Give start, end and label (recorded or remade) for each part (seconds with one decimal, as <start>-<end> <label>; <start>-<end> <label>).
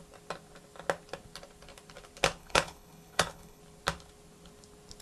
0.0-2.4 recorded; 2.4-3.6 remade; 3.6-5.0 recorded